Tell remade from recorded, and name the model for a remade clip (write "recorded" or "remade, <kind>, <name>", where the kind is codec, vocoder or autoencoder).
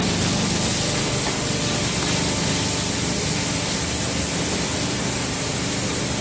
recorded